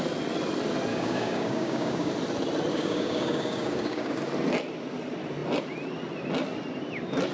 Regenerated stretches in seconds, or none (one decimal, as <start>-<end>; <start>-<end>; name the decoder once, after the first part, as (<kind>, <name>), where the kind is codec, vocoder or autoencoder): 0.9-2.1 (codec, DAC); 2.7-4.2